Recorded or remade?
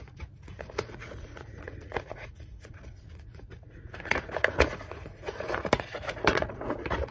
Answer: remade